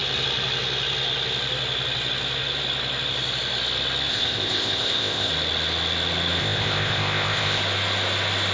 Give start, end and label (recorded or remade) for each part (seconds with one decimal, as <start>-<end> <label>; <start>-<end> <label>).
0.0-4.1 recorded; 4.1-5.3 remade; 5.3-6.4 recorded; 6.4-7.6 remade; 7.6-8.5 recorded